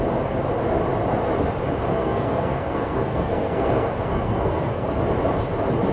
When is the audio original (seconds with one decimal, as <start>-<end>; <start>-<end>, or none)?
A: 0.0-1.9; 4.9-5.9